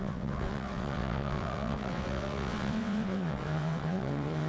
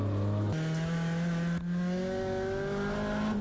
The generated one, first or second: first